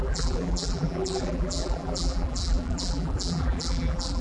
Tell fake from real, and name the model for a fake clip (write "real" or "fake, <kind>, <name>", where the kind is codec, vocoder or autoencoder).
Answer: fake, vocoder, BigVGAN v2